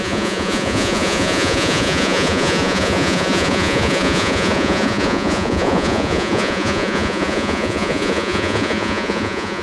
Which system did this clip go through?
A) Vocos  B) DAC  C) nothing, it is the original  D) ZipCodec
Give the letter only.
A